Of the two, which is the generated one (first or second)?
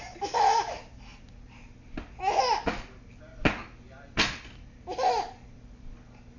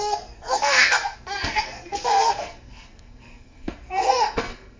second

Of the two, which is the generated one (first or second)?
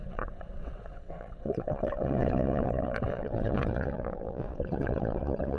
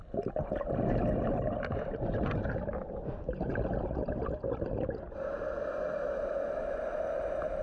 first